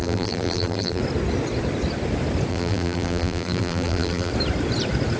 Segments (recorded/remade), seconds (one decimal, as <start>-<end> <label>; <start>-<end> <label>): 0.0-1.0 remade; 1.0-2.5 recorded; 2.5-4.3 remade; 4.3-5.2 recorded